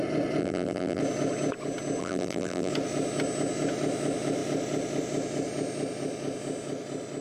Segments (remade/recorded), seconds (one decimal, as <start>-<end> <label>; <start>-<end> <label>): 0.0-0.4 recorded; 0.4-1.0 remade; 1.0-2.0 recorded; 2.0-2.7 remade; 2.7-7.2 recorded